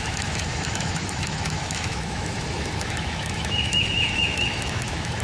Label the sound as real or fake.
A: fake